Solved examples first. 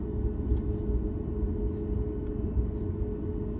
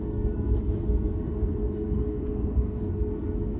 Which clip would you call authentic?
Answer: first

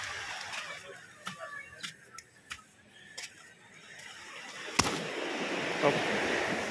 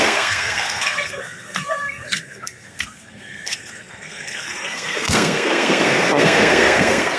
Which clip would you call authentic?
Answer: first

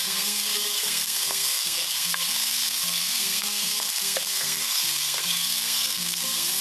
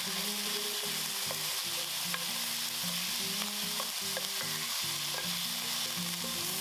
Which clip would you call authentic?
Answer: second